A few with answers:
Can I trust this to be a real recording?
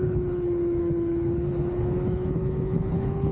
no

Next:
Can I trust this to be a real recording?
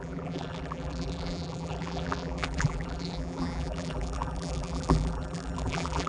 no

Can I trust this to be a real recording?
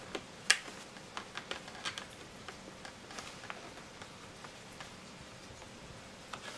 yes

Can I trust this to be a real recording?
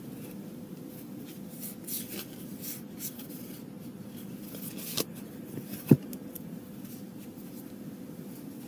yes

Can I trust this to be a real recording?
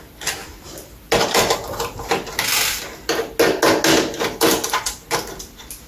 yes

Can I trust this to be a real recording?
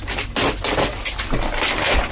yes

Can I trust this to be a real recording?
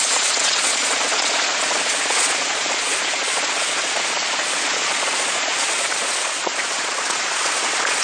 no